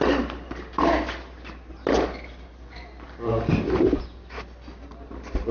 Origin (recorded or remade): recorded